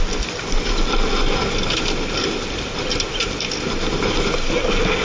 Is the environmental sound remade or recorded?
recorded